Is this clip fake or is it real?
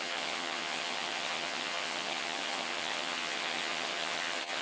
fake